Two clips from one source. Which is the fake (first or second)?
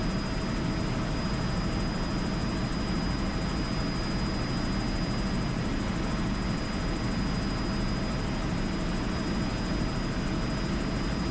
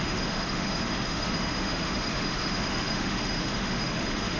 second